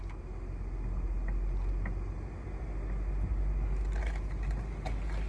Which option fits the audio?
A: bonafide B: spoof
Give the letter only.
A